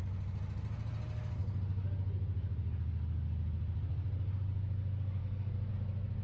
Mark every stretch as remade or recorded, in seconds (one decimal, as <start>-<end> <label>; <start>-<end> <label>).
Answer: 0.0-5.2 recorded; 5.2-5.7 remade; 5.7-6.2 recorded